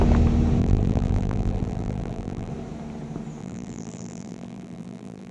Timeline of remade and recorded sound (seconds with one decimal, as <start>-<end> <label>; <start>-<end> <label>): 0.0-0.6 recorded; 0.6-2.5 remade; 2.5-3.4 recorded; 3.4-5.3 remade